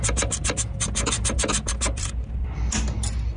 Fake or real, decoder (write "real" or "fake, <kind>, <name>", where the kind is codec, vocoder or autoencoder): real